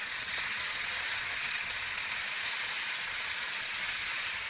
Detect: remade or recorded remade